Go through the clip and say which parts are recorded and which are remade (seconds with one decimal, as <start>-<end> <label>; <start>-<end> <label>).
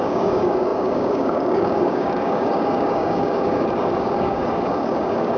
0.0-5.4 remade